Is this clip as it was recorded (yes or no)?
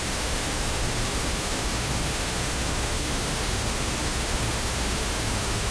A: no